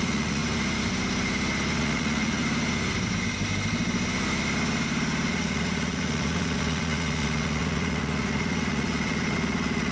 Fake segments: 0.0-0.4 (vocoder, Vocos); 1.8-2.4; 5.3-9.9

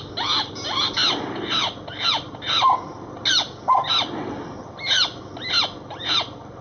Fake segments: none

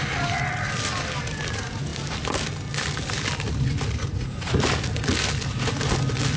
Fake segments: 4.0-4.6 (vocoder, Vocos)